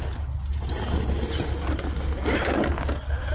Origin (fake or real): real